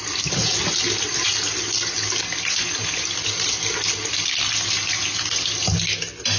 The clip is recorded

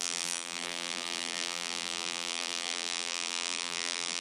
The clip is remade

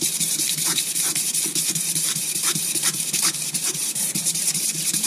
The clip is remade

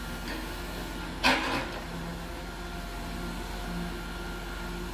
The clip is recorded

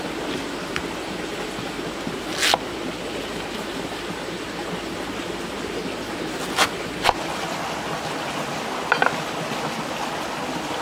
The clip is recorded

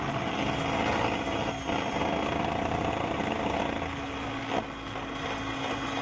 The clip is recorded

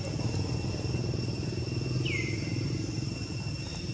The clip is recorded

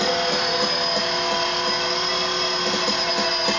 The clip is recorded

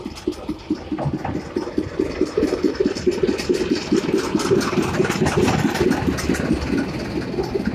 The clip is recorded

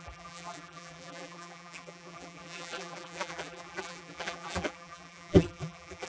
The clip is remade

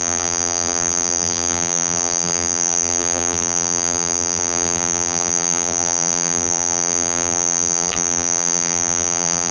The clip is remade